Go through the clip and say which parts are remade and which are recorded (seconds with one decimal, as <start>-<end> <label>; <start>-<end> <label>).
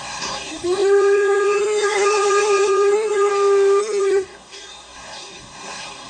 0.0-3.3 remade; 3.3-3.8 recorded; 3.8-6.1 remade